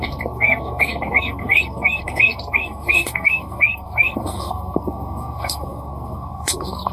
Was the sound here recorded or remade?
remade